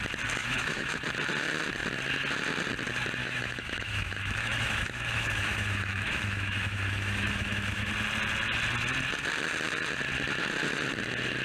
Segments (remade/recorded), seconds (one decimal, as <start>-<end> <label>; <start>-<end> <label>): 0.0-0.4 recorded; 0.4-1.0 remade; 1.0-3.2 recorded; 3.2-7.9 remade; 7.9-11.4 recorded